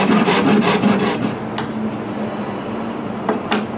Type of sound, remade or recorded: recorded